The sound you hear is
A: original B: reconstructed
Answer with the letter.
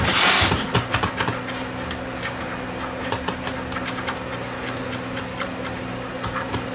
A